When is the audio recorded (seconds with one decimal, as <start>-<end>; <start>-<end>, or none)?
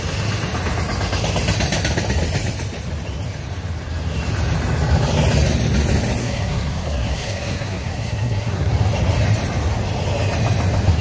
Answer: 0.0-6.2; 8.7-11.0